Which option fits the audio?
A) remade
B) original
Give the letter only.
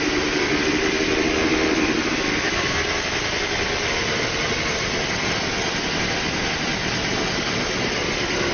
B